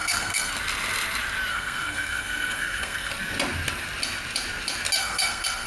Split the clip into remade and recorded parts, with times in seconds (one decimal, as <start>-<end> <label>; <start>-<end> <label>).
0.0-0.5 remade; 0.5-1.5 recorded; 1.5-3.1 remade; 3.1-5.0 recorded; 5.0-5.7 remade